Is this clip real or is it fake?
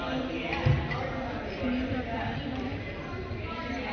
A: real